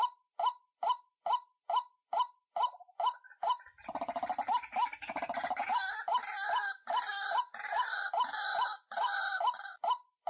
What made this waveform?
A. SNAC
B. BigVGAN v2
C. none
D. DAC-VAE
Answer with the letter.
C